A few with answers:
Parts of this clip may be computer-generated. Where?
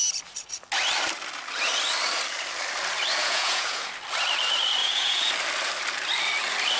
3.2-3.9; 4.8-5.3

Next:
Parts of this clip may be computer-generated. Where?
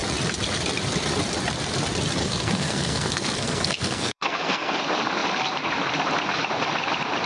2.2-4.8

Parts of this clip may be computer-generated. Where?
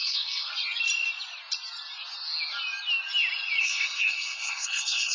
0.0-0.5; 3.6-5.1